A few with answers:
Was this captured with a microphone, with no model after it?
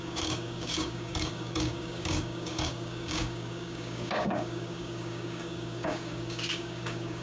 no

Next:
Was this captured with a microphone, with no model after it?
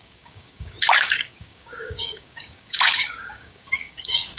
no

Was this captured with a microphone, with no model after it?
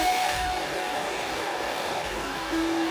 no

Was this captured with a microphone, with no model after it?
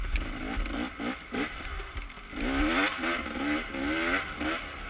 yes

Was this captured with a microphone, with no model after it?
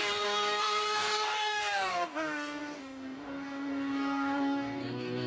no